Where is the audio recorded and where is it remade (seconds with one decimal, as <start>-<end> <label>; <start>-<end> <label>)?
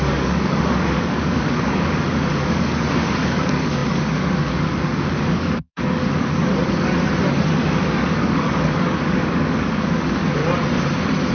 0.0-6.5 remade; 6.5-7.6 recorded; 7.6-10.4 remade; 10.4-11.3 recorded